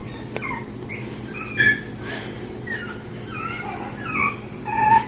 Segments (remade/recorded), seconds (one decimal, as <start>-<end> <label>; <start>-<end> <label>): 0.0-5.1 recorded